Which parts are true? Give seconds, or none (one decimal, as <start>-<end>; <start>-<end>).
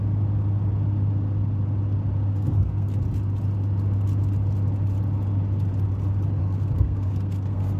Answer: 0.0-2.3; 2.9-6.4